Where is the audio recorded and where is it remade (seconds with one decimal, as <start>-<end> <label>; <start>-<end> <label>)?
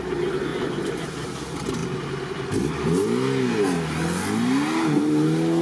0.0-0.5 recorded; 0.5-1.0 remade; 1.0-5.6 recorded